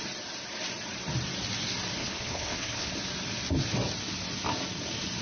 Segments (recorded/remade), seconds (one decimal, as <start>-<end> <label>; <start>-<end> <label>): 0.0-2.0 recorded; 2.0-2.9 remade; 2.9-5.2 recorded